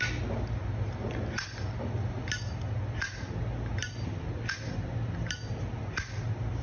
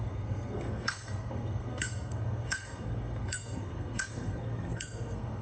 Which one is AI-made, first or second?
second